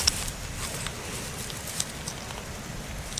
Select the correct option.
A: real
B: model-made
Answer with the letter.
A